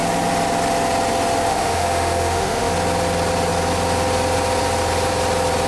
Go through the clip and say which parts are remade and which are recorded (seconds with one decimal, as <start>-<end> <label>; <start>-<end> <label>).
0.0-1.5 recorded; 1.5-2.7 remade; 2.7-5.7 recorded